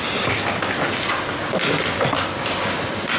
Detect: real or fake real